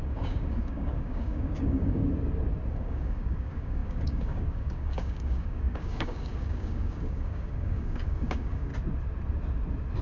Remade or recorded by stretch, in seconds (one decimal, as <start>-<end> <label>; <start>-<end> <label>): 0.0-2.0 remade; 2.0-2.7 recorded; 2.7-8.7 remade; 8.7-10.0 recorded